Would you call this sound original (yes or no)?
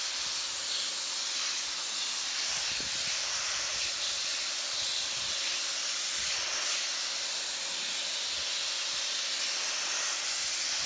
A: yes